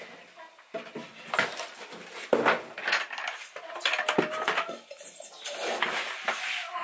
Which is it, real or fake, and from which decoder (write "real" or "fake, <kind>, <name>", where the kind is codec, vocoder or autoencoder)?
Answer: real